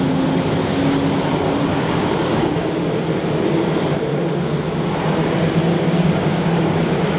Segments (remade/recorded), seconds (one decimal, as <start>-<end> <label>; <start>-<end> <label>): 0.0-1.7 recorded; 1.7-2.9 remade; 2.9-4.1 recorded; 4.1-4.9 remade; 4.9-5.6 recorded; 5.6-6.8 remade; 6.8-7.2 recorded